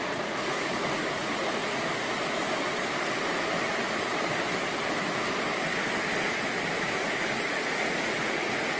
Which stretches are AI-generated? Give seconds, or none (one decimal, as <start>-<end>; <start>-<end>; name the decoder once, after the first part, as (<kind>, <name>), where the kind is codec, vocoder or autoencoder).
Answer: 0.0-1.6 (vocoder, Vocos); 6.8-8.8